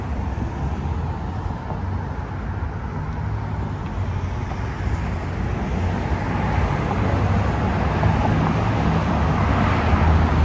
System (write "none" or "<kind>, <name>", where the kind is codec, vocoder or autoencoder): none